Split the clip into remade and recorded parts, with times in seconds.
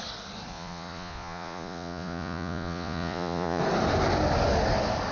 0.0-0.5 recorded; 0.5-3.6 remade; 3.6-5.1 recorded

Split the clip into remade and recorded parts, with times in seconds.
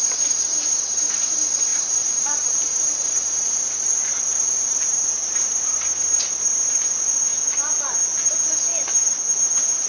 0.0-9.9 recorded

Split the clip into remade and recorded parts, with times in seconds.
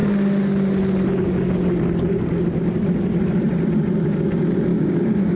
0.0-4.7 recorded; 4.7-5.4 remade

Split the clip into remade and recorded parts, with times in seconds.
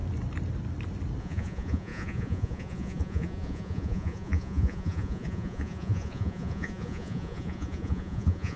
0.0-1.2 recorded; 1.2-8.6 remade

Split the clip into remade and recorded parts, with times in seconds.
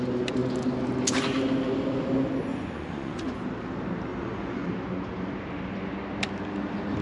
0.0-2.5 recorded; 2.5-3.4 remade; 3.4-4.1 recorded; 4.1-4.7 remade; 4.7-7.0 recorded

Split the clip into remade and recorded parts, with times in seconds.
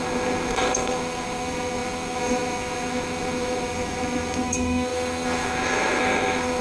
0.0-6.6 remade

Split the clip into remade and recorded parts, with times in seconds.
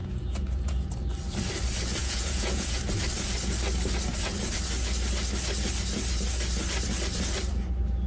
0.0-0.9 remade; 0.9-2.0 recorded; 2.0-2.8 remade; 2.8-8.1 recorded